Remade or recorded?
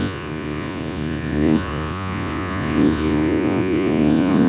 remade